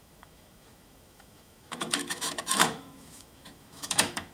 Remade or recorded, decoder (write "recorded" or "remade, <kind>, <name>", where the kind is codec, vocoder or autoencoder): remade, autoencoder, DAC-VAE